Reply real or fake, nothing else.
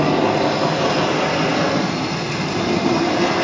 real